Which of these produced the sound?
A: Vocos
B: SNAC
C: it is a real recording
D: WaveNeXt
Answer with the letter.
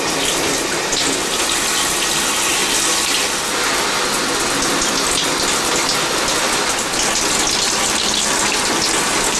C